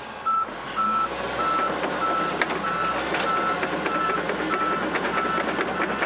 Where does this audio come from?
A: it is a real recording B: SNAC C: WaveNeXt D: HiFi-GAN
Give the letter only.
A